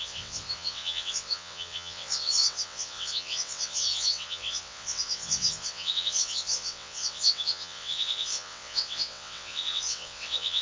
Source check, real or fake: fake